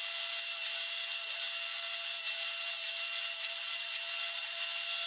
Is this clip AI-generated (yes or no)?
no